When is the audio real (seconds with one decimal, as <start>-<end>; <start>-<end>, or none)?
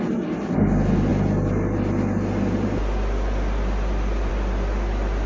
0.0-5.3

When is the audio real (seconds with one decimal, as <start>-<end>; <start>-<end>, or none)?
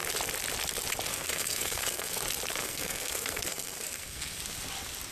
0.0-1.1; 2.2-2.6; 4.4-5.1